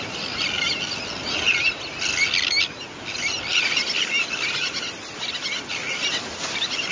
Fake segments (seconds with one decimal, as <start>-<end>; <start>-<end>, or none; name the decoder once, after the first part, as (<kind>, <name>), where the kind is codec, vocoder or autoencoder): none